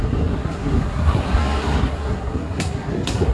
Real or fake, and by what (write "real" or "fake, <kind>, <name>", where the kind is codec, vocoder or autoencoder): fake, codec, SNAC